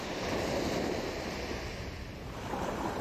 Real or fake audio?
real